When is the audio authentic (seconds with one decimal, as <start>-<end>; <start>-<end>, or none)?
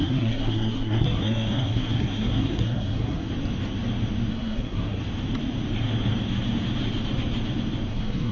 3.3-4.3; 5.0-7.9